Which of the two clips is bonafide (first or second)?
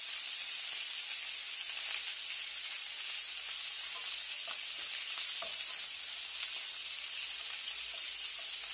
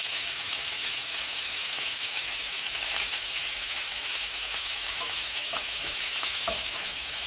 first